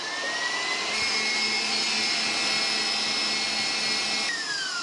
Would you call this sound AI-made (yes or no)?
no